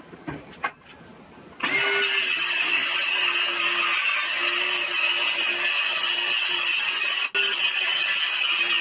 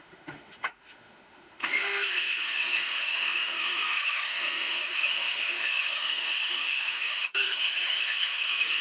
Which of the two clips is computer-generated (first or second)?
second